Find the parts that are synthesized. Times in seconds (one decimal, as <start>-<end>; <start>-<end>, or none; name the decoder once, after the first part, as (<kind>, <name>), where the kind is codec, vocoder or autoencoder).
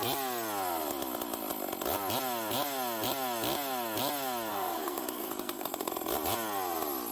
4.5-5.9 (codec, SNAC)